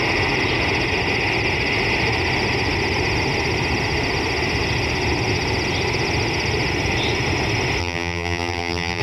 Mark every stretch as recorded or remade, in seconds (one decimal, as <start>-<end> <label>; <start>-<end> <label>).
0.0-7.8 recorded; 7.8-9.0 remade